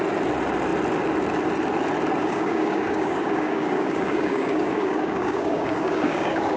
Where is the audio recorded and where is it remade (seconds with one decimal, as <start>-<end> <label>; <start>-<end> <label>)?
0.0-2.2 recorded; 2.2-6.6 remade

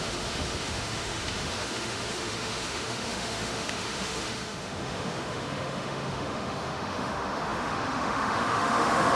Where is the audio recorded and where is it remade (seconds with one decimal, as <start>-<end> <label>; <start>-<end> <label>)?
0.0-9.2 remade

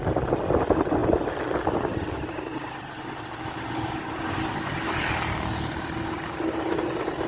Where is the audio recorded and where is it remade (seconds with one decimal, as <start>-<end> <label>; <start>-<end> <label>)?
0.0-7.3 recorded